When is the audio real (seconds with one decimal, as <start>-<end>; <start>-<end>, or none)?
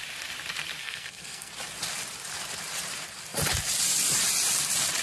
0.0-0.8; 1.5-5.0